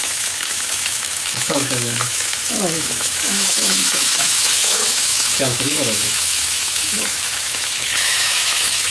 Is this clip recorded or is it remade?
remade